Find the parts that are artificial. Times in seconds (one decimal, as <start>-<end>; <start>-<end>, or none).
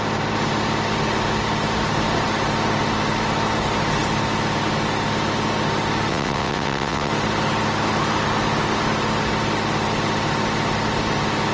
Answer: 6.1-7.1